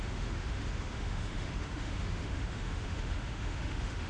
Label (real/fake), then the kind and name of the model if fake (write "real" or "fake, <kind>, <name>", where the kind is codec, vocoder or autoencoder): fake, autoencoder, DAC-VAE